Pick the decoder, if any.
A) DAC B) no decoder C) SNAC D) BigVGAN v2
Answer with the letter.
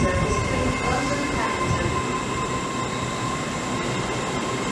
B